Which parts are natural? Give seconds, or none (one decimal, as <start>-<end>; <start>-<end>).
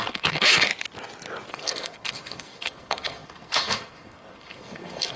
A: 0.7-1.5